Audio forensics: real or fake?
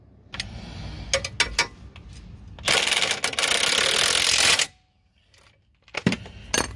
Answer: real